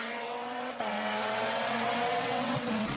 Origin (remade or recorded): remade